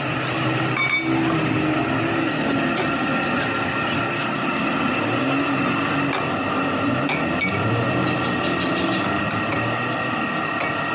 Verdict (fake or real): real